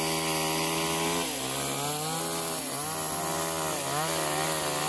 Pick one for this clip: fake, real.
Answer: real